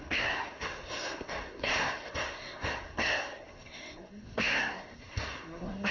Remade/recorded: remade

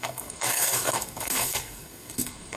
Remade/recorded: remade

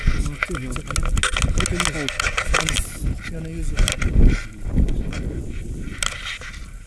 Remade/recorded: recorded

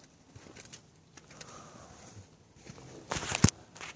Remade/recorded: recorded